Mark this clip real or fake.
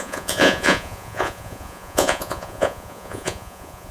fake